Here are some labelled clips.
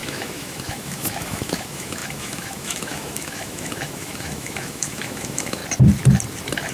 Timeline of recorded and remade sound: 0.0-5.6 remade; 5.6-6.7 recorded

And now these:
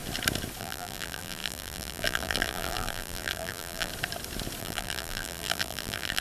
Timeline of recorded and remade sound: 0.0-0.6 recorded; 0.6-3.9 remade; 3.9-4.6 recorded; 4.6-6.2 remade

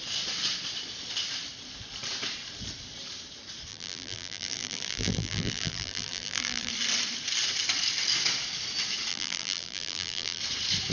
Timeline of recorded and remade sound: 0.0-3.7 recorded; 3.7-6.7 remade; 6.7-9.1 recorded; 9.1-10.4 remade; 10.4-10.9 recorded

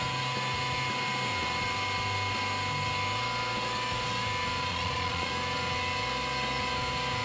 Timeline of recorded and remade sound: 0.0-4.7 recorded; 4.7-5.3 remade; 5.3-7.2 recorded

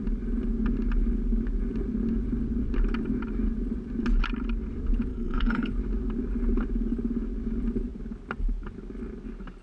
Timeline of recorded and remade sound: 0.0-5.1 recorded; 5.1-5.7 remade; 5.7-9.6 recorded

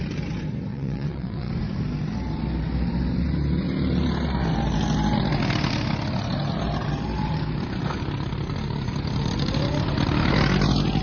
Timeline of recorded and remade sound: 0.0-0.7 recorded; 0.7-1.5 remade; 1.5-11.0 recorded

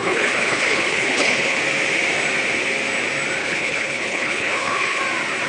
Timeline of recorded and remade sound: 0.0-1.6 remade; 1.6-3.4 recorded; 3.4-5.0 remade; 5.0-5.5 recorded

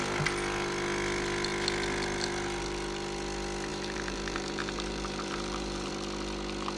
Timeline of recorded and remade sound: 0.0-3.7 recorded; 3.7-5.9 remade; 5.9-6.8 recorded